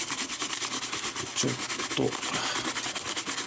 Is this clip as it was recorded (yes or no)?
yes